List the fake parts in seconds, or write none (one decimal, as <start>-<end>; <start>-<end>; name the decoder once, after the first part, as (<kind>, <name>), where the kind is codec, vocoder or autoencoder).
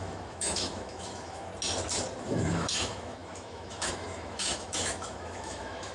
0.0-1.5 (autoencoder, DAC-VAE); 2.2-5.9